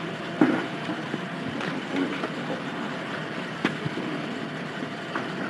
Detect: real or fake real